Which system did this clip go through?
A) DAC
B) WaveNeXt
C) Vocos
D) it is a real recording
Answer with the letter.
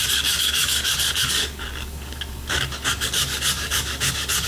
A